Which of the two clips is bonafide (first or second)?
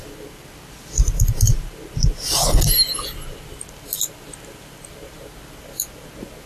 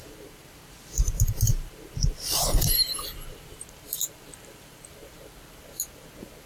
first